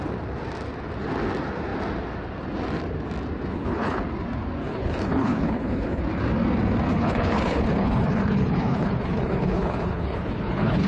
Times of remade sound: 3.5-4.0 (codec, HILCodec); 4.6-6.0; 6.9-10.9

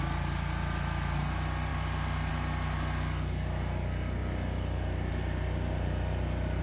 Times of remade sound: none

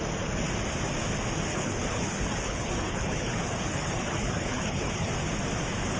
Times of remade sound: 1.5-5.1 (codec, HILCodec)

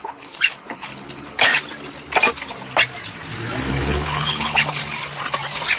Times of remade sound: 0.0-1.5 (codec, HILCodec); 3.7-4.8

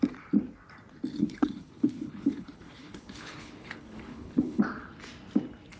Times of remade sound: 1.1-4.6 (codec, HILCodec)

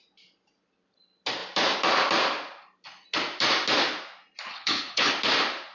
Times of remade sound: 4.5-5.1 (codec, HILCodec)

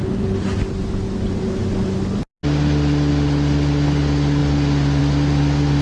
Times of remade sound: none

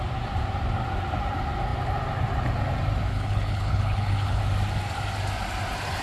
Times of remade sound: 3.1-4.4 (codec, HILCodec)